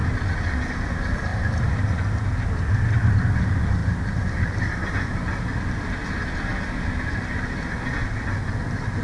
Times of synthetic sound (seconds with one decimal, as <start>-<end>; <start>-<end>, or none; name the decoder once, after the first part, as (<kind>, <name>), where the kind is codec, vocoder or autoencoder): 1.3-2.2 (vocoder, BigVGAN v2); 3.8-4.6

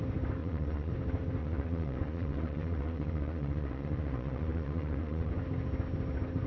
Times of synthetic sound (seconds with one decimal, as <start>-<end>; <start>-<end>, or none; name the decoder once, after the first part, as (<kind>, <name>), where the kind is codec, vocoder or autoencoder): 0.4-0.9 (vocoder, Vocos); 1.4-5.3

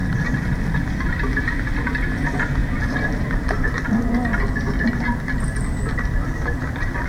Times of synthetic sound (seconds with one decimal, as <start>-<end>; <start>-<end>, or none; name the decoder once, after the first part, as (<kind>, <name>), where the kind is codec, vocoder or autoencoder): 0.0-4.3 (vocoder, BigVGAN v2); 5.7-7.1

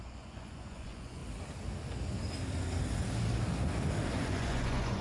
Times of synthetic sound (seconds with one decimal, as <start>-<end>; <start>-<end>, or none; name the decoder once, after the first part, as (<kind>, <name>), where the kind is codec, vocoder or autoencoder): 0.0-1.2 (vocoder, Vocos); 4.1-5.0

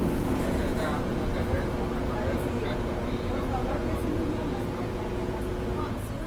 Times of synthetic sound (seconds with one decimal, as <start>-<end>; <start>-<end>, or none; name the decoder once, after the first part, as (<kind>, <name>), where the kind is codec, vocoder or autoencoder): 0.0-1.3 (vocoder, Vocos); 2.1-6.3

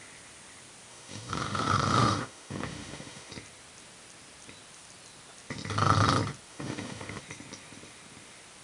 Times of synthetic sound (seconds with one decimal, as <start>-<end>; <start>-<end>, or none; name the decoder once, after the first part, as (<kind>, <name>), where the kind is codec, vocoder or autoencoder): 0.9-3.3 (autoencoder, DAC-VAE); 6.5-7.2

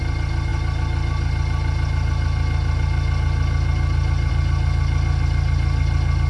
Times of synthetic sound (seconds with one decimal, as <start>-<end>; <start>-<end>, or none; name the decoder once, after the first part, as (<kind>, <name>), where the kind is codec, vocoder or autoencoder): none